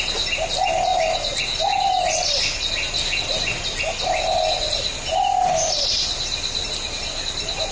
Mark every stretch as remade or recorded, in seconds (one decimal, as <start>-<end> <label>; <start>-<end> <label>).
0.0-7.7 recorded